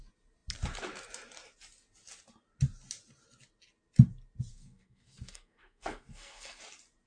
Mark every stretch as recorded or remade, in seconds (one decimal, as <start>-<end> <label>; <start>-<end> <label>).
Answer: 0.0-4.5 recorded; 4.5-6.6 remade; 6.6-7.1 recorded